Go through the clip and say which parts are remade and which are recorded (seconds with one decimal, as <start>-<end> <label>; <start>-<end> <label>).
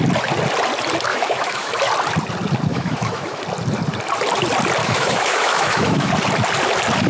0.0-1.1 recorded; 1.1-1.8 remade; 1.8-2.7 recorded; 2.7-3.4 remade; 3.4-4.8 recorded; 4.8-6.1 remade; 6.1-7.1 recorded